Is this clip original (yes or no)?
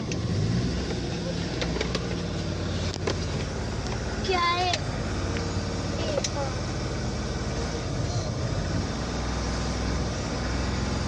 yes